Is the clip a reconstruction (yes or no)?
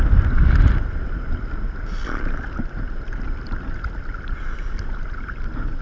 no